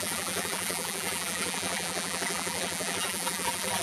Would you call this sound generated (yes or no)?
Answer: yes